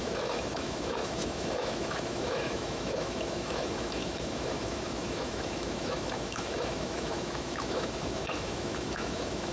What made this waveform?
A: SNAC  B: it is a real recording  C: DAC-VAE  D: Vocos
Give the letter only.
C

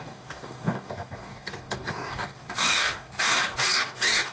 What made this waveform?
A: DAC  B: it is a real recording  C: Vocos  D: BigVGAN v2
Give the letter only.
A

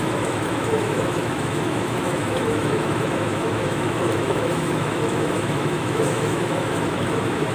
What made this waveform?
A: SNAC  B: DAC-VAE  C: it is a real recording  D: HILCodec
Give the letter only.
B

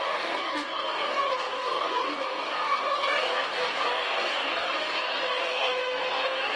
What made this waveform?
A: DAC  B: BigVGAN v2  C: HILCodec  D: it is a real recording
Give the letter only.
A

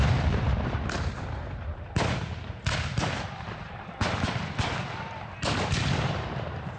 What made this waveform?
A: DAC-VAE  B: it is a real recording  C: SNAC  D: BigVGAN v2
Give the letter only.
D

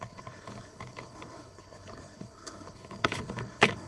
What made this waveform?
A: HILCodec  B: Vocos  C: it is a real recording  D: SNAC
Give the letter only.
A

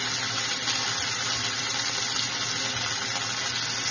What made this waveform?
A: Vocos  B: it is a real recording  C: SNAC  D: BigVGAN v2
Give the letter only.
B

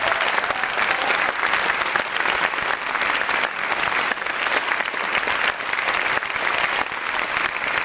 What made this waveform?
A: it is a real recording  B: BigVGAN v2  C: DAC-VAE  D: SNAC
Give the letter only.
A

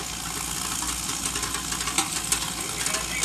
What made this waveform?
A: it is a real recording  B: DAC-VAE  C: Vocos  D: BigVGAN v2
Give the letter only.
A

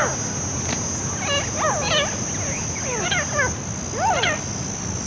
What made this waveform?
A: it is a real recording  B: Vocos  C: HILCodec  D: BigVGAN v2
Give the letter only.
A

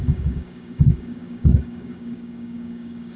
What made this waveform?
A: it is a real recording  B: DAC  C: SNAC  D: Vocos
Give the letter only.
B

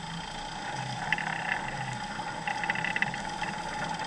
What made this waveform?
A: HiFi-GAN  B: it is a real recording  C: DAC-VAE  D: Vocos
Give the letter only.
B